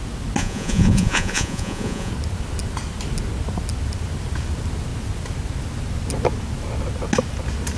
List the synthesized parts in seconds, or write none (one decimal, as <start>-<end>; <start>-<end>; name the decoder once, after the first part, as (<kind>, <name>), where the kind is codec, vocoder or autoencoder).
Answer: 0.4-2.1 (vocoder, Vocos)